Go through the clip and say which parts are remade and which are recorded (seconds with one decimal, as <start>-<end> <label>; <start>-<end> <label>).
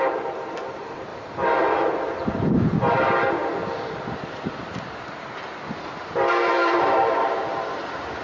0.0-1.1 remade; 1.1-2.3 recorded; 2.3-3.4 remade; 3.4-5.8 recorded; 5.8-8.2 remade